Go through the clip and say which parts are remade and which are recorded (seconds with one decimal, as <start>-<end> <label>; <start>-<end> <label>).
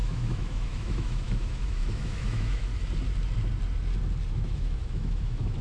0.0-2.7 remade; 2.7-4.3 recorded; 4.3-5.6 remade